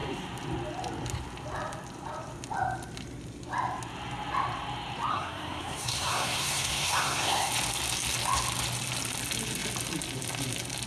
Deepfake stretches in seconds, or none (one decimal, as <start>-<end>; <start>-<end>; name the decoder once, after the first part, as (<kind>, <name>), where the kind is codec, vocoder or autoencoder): 5.1-7.5 (codec, SNAC)